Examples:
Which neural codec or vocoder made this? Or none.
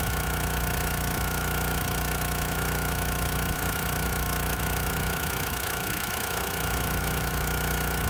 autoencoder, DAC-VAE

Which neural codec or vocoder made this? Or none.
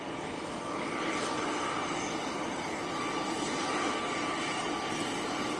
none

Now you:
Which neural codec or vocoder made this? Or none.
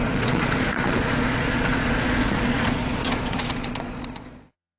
vocoder, Vocos